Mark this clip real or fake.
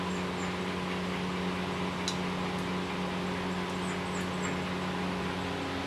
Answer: real